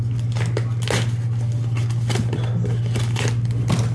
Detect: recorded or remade recorded